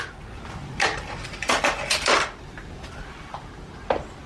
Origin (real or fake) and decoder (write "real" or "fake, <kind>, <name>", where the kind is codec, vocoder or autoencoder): real